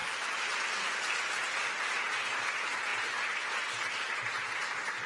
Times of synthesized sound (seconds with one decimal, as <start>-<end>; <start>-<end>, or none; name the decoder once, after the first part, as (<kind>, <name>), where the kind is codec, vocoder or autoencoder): none